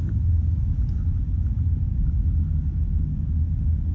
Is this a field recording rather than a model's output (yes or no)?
yes